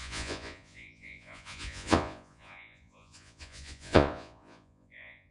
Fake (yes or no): yes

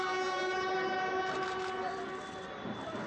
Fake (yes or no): no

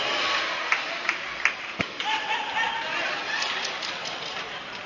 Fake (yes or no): no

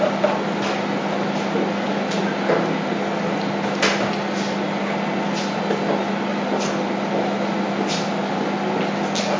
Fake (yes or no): no